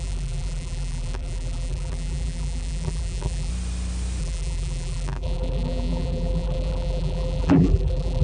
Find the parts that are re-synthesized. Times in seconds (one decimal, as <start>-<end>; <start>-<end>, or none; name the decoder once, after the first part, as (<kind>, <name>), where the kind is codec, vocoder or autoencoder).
0.0-3.5 (vocoder, BigVGAN v2); 4.2-8.2